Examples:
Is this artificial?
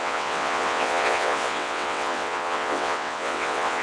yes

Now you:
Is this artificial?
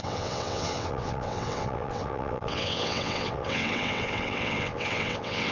yes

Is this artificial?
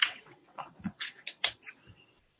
yes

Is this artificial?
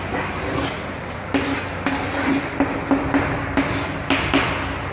no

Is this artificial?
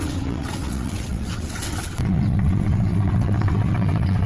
yes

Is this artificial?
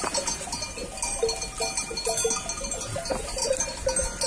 no